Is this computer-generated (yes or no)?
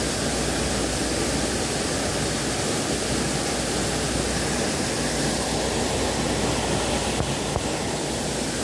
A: no